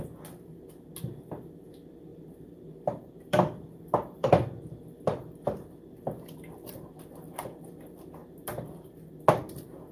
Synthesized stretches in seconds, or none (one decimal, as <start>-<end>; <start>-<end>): 2.1-7.1